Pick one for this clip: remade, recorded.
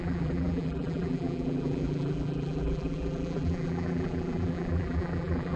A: remade